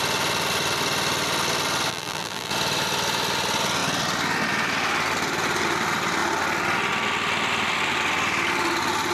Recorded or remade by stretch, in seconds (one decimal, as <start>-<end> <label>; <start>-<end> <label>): 0.0-1.9 recorded; 1.9-2.5 remade; 2.5-9.1 recorded